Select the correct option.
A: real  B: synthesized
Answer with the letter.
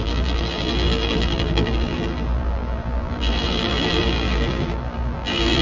B